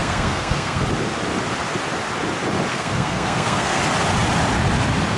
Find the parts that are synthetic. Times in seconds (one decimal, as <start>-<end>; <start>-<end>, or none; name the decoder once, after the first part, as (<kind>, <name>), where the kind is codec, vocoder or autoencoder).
0.0-0.8 (codec, SNAC); 2.7-3.8